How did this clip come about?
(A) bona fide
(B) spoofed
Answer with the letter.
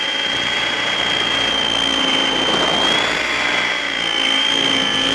A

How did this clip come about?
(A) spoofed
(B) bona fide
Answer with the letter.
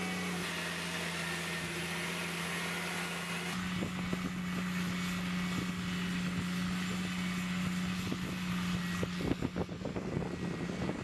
B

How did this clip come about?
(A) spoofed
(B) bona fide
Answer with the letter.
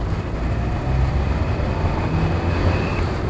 B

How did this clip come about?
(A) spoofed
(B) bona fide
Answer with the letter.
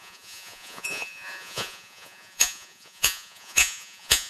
A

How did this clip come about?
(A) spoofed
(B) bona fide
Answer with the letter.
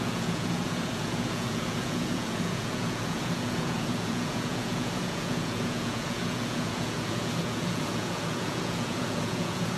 A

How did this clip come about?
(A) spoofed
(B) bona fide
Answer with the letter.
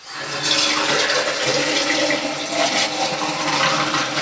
B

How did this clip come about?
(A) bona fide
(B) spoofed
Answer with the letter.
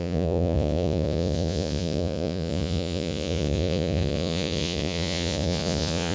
B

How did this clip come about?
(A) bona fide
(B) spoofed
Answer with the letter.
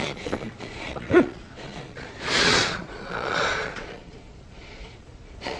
B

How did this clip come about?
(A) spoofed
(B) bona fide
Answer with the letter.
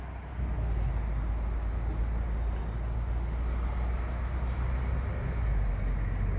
B